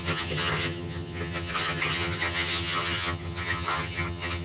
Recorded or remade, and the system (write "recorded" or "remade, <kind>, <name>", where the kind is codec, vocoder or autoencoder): remade, vocoder, HiFi-GAN